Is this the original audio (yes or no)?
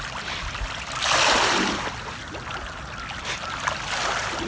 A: yes